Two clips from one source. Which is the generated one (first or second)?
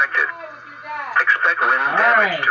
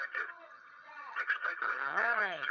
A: second